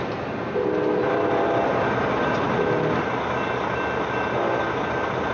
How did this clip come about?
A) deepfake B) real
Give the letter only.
B